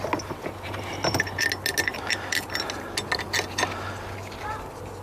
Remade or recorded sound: recorded